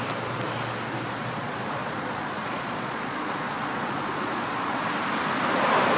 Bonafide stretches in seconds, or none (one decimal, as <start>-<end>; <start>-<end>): 0.0-1.2; 4.8-6.0